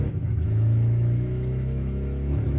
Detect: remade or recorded remade